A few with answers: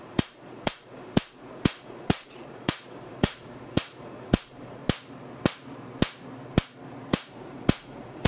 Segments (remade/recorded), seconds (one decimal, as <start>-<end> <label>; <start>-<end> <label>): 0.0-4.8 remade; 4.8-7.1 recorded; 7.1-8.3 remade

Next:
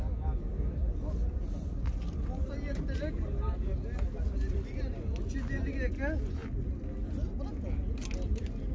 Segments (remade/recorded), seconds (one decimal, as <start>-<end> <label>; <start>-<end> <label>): 0.0-8.7 recorded

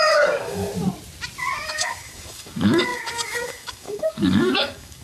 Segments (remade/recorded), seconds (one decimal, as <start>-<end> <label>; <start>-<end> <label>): 0.0-0.6 remade; 0.6-1.7 recorded; 1.7-5.0 remade

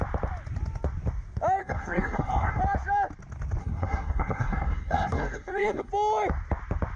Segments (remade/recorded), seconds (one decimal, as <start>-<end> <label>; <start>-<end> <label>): 0.0-1.6 recorded; 1.6-2.6 remade; 2.6-3.6 recorded; 3.6-5.9 remade; 5.9-7.0 recorded